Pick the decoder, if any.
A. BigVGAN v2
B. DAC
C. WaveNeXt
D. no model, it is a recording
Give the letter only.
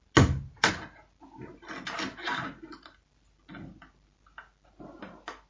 D